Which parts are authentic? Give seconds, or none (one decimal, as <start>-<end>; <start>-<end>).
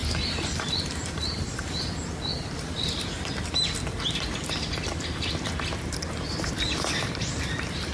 1.8-2.3; 3.3-7.9